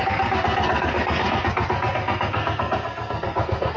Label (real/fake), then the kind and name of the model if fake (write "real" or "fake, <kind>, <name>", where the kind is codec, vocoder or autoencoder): fake, codec, SNAC